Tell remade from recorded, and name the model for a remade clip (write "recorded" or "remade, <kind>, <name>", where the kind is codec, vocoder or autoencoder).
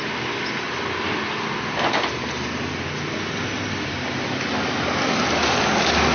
recorded